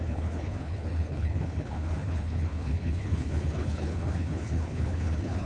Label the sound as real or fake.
fake